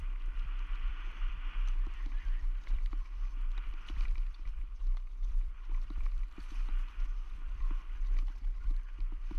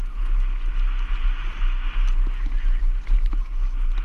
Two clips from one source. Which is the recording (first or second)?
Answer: second